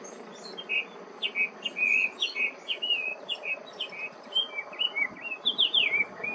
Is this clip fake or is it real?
real